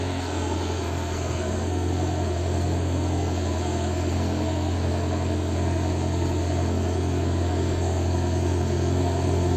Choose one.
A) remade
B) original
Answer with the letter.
A